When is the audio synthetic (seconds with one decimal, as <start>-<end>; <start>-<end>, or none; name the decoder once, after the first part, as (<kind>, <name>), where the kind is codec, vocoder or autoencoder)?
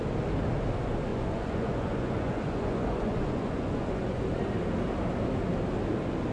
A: 1.1-4.2 (vocoder, Vocos)